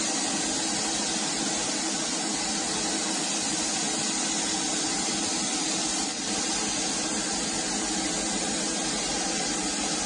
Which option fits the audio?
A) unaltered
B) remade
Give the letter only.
A